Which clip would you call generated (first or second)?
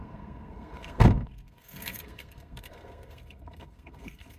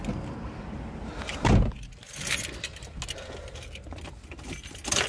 first